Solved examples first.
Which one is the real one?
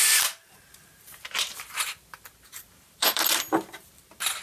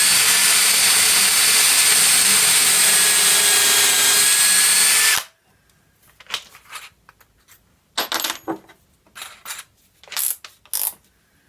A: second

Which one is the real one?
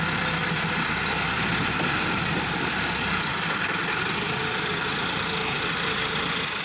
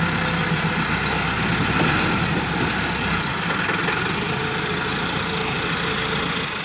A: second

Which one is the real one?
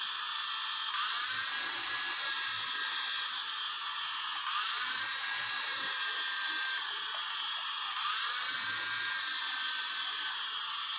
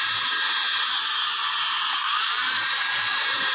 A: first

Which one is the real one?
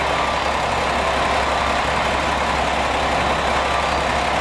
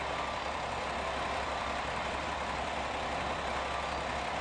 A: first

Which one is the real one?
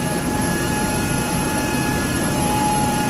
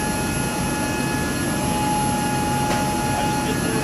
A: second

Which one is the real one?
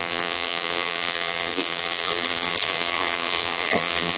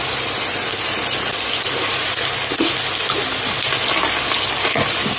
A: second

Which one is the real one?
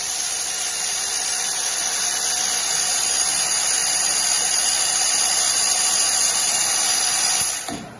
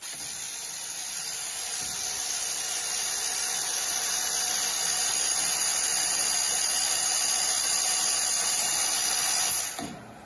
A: second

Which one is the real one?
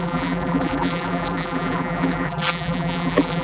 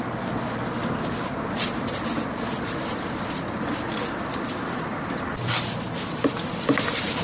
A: second